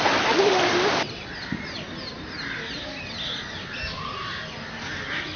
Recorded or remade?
recorded